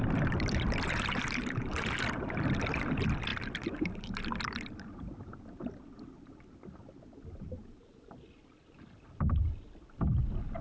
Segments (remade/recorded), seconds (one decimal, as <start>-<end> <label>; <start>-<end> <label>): 0.0-10.6 remade